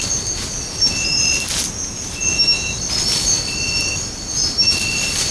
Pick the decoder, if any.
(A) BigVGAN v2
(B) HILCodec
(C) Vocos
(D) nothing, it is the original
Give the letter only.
D